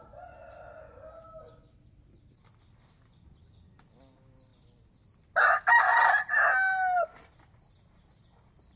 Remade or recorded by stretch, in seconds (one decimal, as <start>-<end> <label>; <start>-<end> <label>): 0.0-8.8 recorded